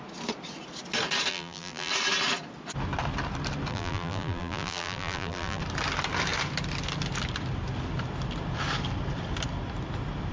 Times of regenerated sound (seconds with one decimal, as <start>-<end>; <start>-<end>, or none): 1.3-1.9; 3.7-5.6